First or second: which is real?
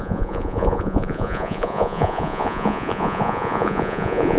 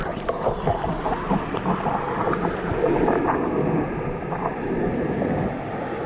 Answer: second